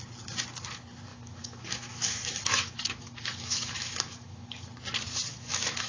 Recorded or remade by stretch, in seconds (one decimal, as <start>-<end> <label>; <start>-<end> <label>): 0.0-1.1 recorded; 1.1-4.6 remade; 4.6-5.3 recorded; 5.3-5.9 remade